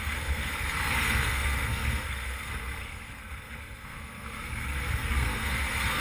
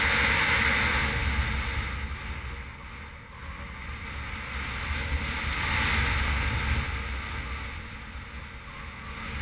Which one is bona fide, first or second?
second